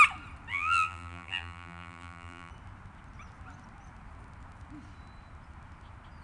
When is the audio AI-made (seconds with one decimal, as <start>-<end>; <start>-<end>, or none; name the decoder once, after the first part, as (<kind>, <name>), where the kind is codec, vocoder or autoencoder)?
0.5-2.5 (vocoder, BigVGAN v2)